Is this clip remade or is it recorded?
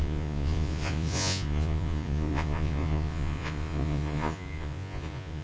remade